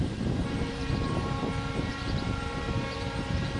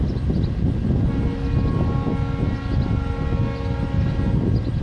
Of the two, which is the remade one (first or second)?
first